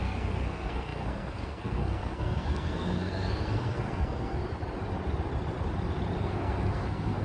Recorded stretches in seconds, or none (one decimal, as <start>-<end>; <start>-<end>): 4.4-6.2